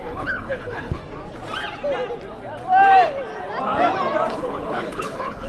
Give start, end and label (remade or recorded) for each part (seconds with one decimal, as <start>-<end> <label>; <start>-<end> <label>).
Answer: 0.0-1.0 remade; 1.0-4.3 recorded; 4.3-5.5 remade

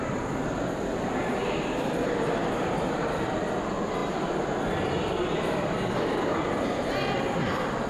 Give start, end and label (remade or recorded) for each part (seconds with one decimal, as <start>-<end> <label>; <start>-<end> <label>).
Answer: 0.0-7.9 recorded

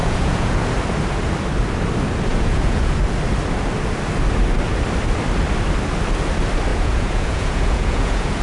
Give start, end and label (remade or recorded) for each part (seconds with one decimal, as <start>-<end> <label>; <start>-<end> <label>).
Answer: 0.0-0.7 remade; 0.7-2.3 recorded; 2.3-3.0 remade; 3.0-6.7 recorded; 6.7-8.4 remade

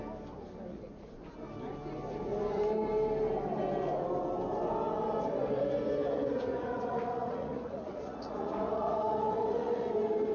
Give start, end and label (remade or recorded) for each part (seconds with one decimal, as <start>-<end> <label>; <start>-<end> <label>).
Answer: 0.0-0.7 recorded; 0.7-1.3 remade; 1.3-6.5 recorded; 6.5-9.9 remade; 9.9-10.3 recorded